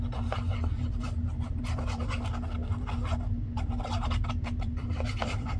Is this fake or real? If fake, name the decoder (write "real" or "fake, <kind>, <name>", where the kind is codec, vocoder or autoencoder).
fake, vocoder, BigVGAN v2